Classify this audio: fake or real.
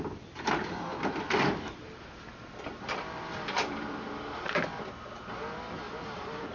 fake